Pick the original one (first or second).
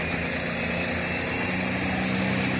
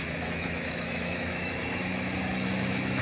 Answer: first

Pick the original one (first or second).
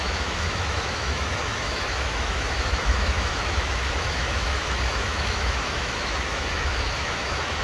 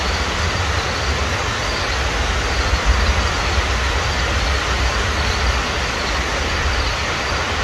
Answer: second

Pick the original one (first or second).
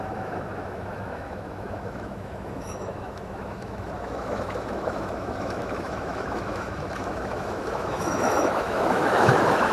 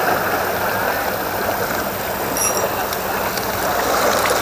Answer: second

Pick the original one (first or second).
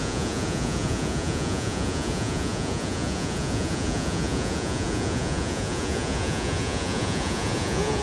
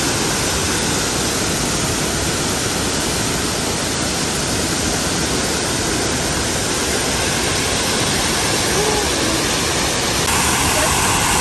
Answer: second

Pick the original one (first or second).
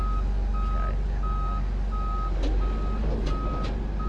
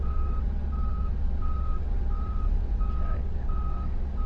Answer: first